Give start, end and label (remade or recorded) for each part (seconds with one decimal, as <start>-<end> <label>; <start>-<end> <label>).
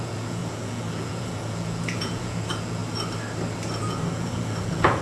0.0-2.8 remade; 2.8-3.8 recorded; 3.8-5.0 remade